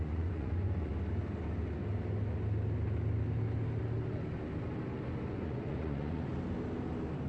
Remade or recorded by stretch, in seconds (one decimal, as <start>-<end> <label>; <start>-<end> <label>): 0.0-0.9 remade; 0.9-5.3 recorded; 5.3-6.3 remade; 6.3-7.3 recorded